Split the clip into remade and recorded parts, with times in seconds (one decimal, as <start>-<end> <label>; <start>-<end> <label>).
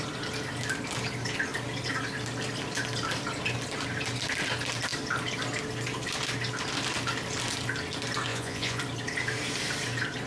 0.0-8.3 recorded; 8.3-8.8 remade; 8.8-10.3 recorded